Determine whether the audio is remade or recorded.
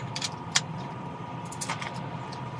remade